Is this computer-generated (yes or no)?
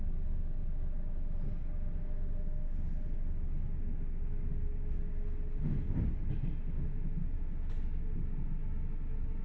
no